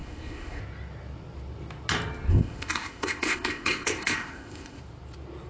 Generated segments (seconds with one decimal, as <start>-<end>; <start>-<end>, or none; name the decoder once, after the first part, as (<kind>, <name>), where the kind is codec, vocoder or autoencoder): 0.0-0.6 (codec, ZipCodec); 2.3-4.8

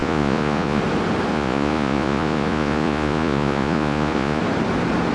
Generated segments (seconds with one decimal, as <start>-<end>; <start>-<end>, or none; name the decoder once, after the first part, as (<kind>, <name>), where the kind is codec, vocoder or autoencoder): 0.0-0.8 (vocoder, Vocos); 1.3-4.4

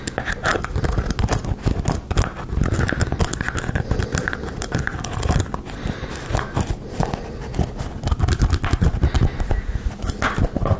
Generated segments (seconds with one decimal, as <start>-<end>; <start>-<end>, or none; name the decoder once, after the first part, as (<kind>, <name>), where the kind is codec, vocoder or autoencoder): none

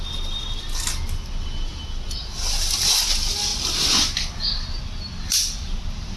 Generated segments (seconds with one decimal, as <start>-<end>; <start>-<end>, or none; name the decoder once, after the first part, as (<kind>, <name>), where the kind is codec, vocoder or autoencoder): none

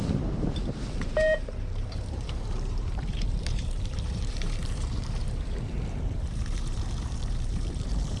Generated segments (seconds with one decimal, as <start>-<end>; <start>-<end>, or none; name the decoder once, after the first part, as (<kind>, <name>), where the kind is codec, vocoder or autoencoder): 0.0-8.2 (vocoder, BigVGAN v2)